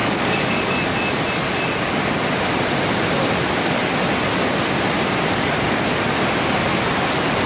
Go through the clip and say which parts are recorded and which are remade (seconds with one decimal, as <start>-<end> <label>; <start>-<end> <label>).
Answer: 0.0-0.6 remade; 0.6-7.5 recorded